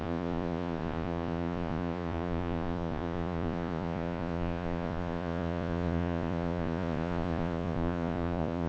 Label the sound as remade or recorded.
remade